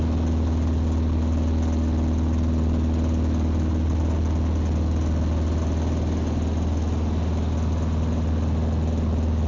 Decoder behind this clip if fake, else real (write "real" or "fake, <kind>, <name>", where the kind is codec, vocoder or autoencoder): real